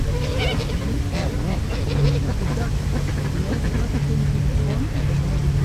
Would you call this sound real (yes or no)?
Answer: yes